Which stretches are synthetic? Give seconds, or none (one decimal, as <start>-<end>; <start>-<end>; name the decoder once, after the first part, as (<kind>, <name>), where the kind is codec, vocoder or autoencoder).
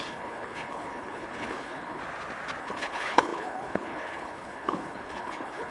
0.0-2.0 (codec, HILCodec); 2.6-5.7